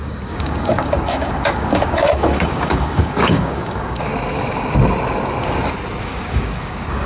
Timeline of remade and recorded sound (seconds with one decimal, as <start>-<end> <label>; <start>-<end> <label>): 0.0-4.1 remade; 4.1-6.0 recorded; 6.0-7.1 remade